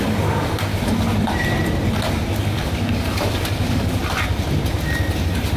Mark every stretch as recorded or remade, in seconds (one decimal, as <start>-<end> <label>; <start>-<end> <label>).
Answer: 0.0-0.7 remade; 0.7-2.4 recorded; 2.4-4.0 remade; 4.0-5.6 recorded